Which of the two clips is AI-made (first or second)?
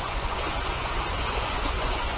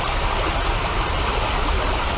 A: first